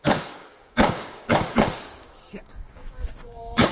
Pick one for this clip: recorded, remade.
remade